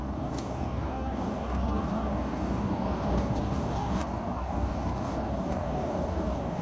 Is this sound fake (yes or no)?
yes